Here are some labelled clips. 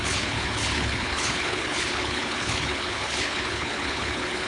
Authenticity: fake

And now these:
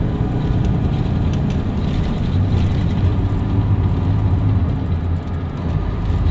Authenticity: real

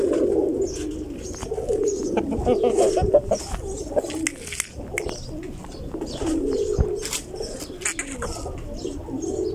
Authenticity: real